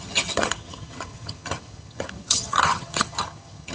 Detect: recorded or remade remade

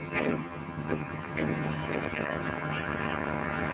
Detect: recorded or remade remade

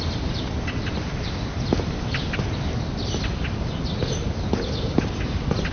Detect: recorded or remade recorded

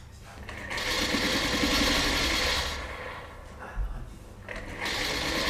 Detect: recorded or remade recorded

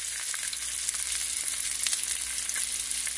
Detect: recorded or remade recorded